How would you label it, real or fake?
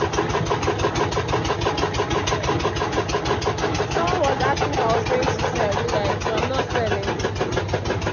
real